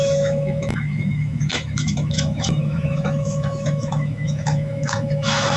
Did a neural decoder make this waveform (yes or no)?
yes